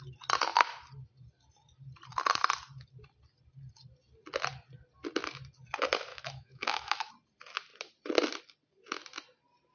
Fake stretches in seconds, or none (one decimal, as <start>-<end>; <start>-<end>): 6.1-7.1